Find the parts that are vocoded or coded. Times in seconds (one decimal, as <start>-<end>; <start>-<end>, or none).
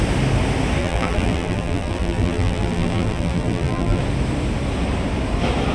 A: 0.8-4.0